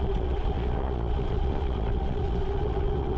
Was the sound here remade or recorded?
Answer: remade